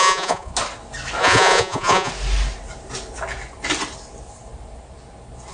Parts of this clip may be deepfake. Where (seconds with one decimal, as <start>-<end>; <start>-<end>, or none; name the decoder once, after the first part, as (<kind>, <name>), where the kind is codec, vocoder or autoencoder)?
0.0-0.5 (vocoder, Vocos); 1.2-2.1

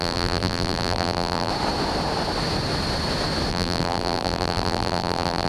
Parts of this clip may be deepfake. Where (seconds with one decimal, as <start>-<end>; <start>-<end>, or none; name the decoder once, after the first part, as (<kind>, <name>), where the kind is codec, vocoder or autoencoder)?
0.0-1.5 (vocoder, BigVGAN v2); 3.5-5.5

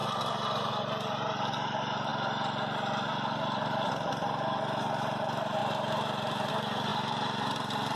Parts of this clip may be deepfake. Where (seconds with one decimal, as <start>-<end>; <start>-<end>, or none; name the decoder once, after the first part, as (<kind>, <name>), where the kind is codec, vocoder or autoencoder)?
5.6-6.5 (vocoder, BigVGAN v2)

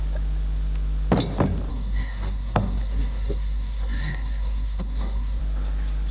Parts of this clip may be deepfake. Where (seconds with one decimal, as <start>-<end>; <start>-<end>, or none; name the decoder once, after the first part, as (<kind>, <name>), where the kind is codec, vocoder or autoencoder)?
1.7-5.4 (codec, SNAC)